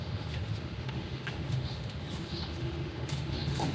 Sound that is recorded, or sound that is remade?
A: remade